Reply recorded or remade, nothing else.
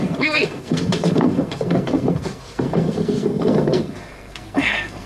remade